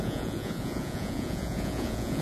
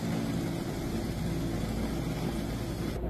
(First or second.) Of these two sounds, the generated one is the first